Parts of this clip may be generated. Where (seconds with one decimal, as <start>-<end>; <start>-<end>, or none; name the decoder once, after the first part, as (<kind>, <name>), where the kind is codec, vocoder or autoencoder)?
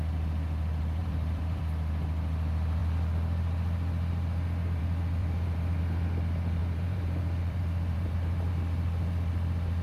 1.0-1.6 (vocoder, BigVGAN v2); 5.2-5.8; 6.6-8.5